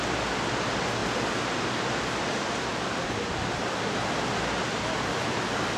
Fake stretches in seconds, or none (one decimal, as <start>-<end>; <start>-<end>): none